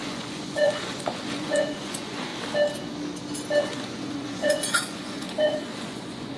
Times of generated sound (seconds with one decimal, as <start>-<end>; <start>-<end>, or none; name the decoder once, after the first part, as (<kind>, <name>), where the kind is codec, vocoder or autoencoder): 0.0-2.3 (vocoder, Vocos); 3.6-6.4